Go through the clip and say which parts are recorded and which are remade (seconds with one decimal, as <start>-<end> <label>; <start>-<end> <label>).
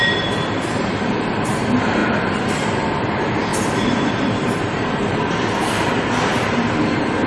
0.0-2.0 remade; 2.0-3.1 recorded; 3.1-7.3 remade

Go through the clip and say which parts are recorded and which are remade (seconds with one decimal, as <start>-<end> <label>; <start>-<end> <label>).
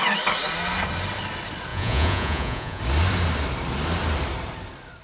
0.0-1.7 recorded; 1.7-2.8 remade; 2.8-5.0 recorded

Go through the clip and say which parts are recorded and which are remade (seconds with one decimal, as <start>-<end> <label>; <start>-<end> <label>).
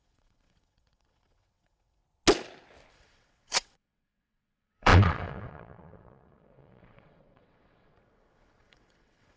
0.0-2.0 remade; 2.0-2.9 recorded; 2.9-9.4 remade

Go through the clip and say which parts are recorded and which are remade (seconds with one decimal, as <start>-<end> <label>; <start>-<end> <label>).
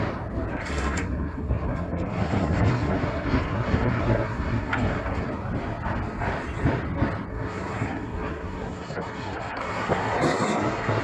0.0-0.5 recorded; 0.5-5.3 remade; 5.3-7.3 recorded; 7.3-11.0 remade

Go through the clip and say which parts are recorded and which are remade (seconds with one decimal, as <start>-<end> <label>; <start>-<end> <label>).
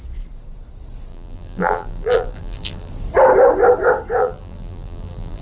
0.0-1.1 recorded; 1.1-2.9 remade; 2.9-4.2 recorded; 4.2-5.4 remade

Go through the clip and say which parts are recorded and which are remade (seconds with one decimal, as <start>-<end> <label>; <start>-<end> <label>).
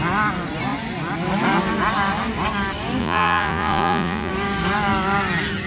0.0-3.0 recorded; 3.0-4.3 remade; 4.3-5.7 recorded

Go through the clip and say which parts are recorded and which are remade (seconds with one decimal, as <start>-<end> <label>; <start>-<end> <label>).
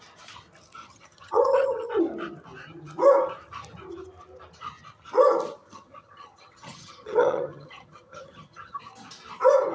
0.0-0.8 recorded; 0.8-2.0 remade; 2.0-5.6 recorded; 5.6-8.8 remade; 8.8-9.7 recorded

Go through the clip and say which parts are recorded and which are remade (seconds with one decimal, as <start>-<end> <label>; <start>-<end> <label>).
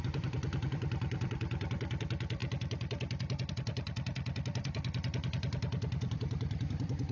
0.0-2.4 remade; 2.4-3.5 recorded; 3.5-7.1 remade